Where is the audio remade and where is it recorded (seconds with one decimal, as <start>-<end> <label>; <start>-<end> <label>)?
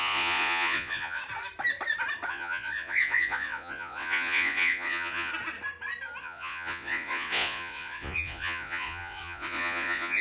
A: 0.0-1.2 remade; 1.2-2.3 recorded; 2.3-5.3 remade; 5.3-6.2 recorded; 6.2-10.2 remade